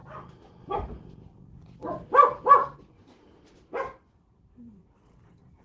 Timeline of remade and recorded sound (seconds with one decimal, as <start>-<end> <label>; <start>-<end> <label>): 0.0-5.6 recorded